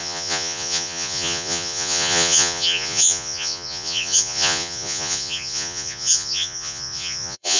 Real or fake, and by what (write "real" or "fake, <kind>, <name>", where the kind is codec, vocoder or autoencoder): fake, vocoder, Vocos